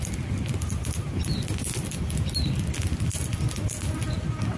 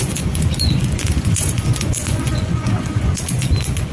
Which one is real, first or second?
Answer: first